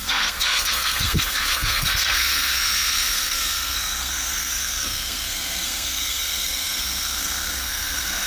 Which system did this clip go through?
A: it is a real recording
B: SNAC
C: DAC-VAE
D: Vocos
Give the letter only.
B